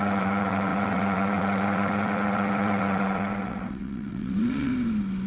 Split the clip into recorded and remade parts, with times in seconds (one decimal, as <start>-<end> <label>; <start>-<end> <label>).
0.0-4.7 remade; 4.7-5.3 recorded